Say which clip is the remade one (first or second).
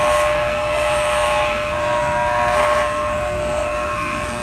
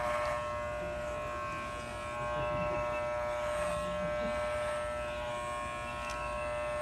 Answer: first